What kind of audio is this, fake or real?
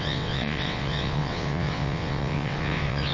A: fake